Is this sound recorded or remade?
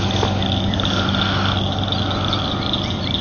recorded